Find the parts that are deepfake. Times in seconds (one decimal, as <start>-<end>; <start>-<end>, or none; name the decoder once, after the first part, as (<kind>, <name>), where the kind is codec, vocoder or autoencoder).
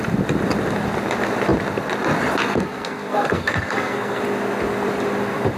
2.4-4.2 (codec, SNAC)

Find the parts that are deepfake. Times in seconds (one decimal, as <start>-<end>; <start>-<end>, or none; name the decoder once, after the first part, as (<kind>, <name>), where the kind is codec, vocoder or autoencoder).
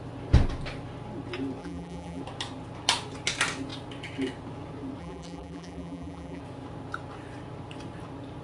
1.6-2.2 (vocoder, BigVGAN v2); 5.0-6.4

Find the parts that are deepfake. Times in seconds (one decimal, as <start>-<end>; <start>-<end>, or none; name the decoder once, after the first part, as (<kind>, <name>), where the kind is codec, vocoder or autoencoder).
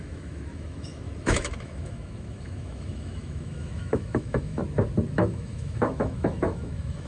0.0-4.6 (autoencoder, DAC-VAE); 5.1-7.1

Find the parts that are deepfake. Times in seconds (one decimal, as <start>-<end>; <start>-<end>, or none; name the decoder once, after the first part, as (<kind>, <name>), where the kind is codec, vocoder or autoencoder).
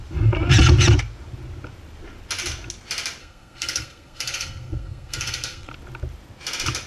3.2-5.7 (codec, SNAC)